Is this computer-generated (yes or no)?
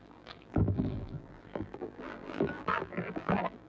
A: yes